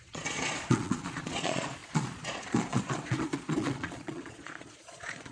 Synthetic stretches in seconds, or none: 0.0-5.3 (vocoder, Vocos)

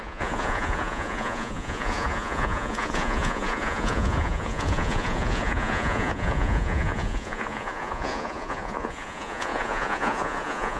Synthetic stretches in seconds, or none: 0.0-10.8 (vocoder, Vocos)

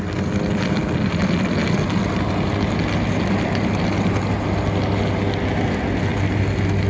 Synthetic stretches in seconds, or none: none

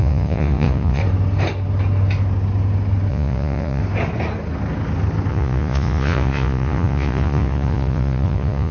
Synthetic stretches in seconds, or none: 0.0-1.0 (vocoder, Vocos); 3.1-3.8; 5.3-8.7

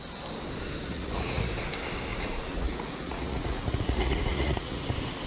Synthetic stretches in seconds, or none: 0.9-1.4 (vocoder, Vocos); 2.1-4.8

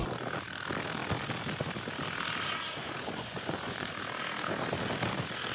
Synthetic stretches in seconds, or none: 2.8-3.9 (vocoder, Vocos)

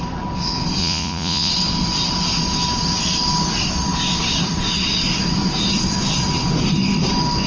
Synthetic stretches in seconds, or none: 0.8-1.5 (vocoder, Vocos)